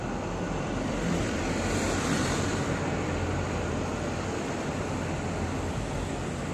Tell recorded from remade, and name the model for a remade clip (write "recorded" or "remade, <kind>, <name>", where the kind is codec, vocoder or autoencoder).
recorded